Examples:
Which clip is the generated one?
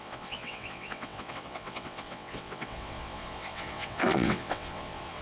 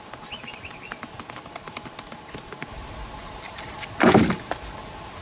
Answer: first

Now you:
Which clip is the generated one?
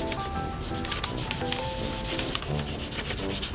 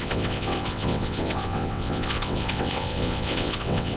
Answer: second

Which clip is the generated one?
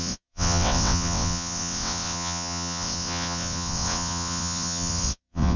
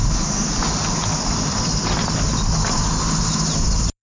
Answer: first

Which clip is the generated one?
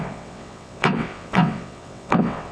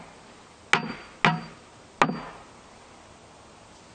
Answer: first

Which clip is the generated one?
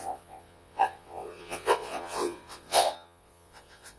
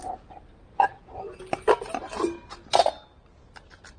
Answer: first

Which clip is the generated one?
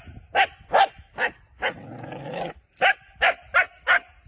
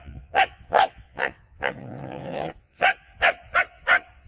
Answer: second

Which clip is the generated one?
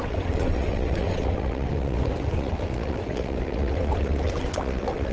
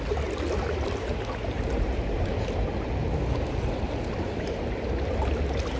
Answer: first